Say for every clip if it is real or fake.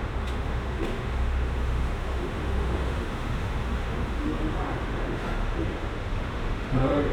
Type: fake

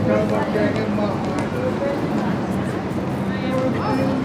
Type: real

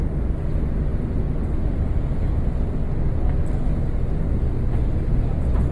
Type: real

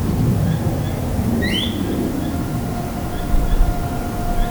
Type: real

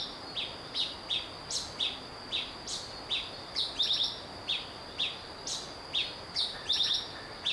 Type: real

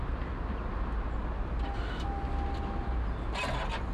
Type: real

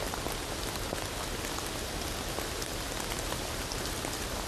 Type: real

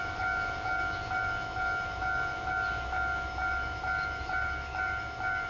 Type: fake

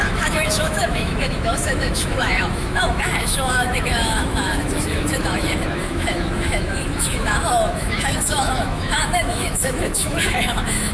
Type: fake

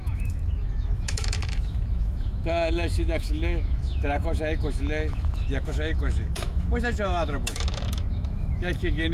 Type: fake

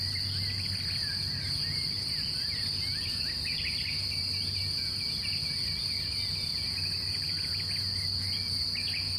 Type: real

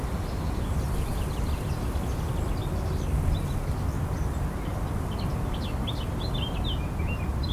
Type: real